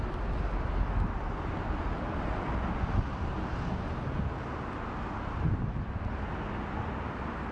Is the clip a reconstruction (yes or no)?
no